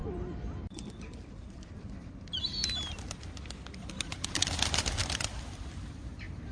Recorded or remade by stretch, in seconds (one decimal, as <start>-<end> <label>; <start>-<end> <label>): 0.0-6.5 recorded